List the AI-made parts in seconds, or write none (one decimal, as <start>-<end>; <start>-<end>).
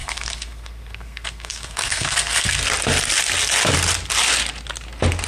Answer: 0.0-2.6